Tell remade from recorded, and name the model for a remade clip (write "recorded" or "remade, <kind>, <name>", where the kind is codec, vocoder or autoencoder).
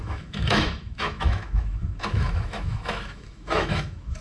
remade, autoencoder, DAC-VAE